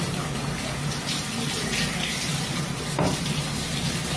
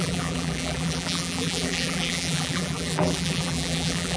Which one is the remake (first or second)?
second